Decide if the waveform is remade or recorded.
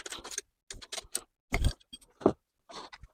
recorded